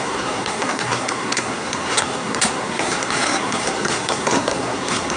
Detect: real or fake fake